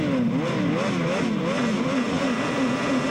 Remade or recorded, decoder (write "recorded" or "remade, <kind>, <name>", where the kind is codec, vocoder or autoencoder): recorded